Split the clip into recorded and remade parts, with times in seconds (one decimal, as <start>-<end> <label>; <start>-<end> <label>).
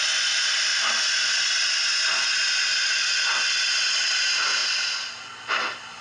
0.0-6.0 recorded